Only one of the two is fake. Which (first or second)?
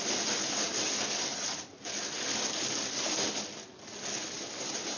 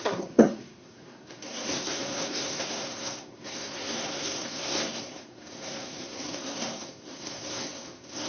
second